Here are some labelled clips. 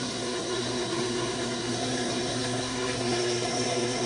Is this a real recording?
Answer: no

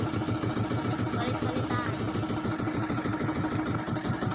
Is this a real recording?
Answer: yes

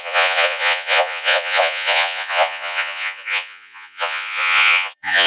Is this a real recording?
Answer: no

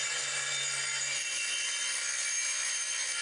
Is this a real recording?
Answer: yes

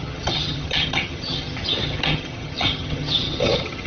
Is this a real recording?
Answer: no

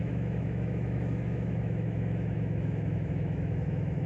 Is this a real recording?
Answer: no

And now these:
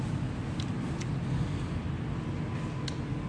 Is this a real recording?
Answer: yes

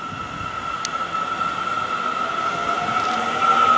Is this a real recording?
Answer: yes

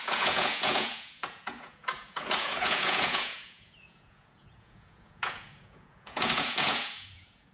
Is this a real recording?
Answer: no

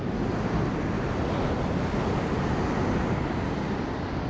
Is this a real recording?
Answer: yes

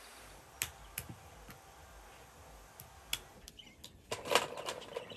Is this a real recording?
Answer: yes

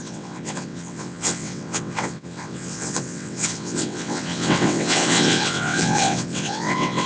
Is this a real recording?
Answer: no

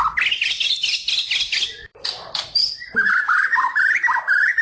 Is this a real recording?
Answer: no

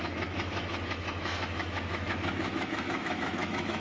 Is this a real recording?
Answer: no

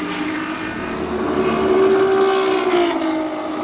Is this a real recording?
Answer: yes